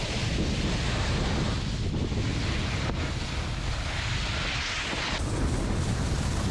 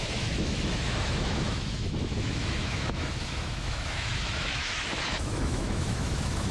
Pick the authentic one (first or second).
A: first